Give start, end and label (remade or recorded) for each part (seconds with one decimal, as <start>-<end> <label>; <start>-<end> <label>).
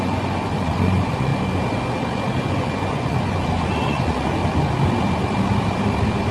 0.0-1.3 remade; 1.3-2.4 recorded; 2.4-4.4 remade; 4.4-6.3 recorded